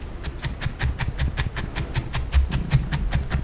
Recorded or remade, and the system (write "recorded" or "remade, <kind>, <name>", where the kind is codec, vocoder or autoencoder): recorded